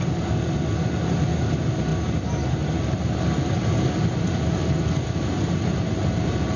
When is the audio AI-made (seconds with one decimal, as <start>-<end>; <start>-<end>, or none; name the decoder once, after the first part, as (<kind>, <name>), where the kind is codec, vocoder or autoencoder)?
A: none